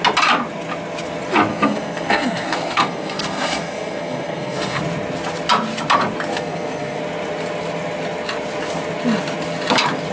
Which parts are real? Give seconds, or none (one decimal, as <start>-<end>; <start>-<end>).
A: 0.0-1.5; 4.8-6.3; 7.0-10.1